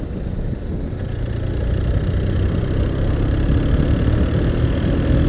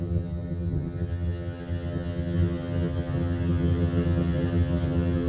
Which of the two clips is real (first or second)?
first